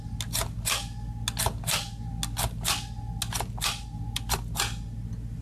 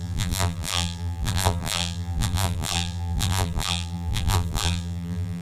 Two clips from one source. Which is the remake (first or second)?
second